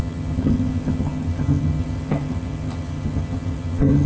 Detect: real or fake fake